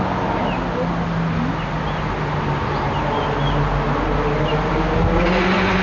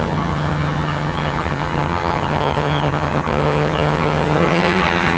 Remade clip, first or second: second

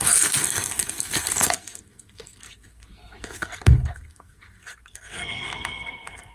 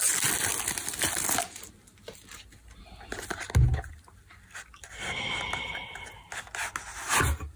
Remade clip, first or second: first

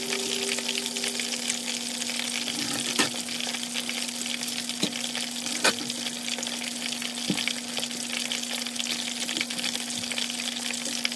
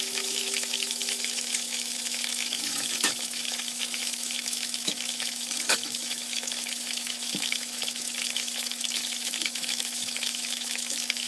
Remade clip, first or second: second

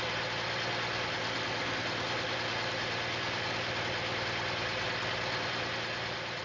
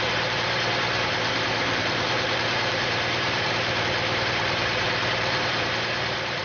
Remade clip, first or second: second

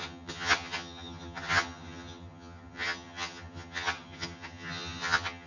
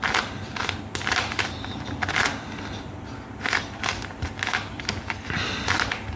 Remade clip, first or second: first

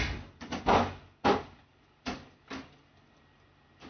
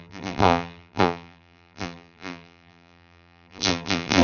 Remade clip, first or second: second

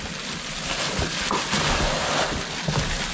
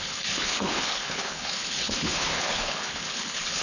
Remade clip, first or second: second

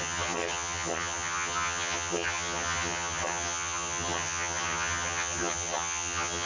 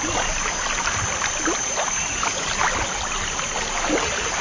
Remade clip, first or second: first